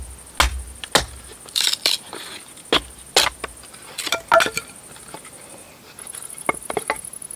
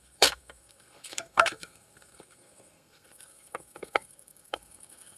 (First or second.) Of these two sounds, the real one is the first